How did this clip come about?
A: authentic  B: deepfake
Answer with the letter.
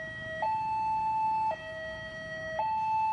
A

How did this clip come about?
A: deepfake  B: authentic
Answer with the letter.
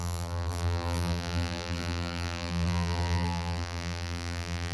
A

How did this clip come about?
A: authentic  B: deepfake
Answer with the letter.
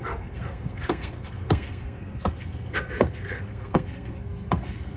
B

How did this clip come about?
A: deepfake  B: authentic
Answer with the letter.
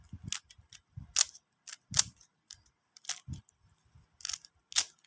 B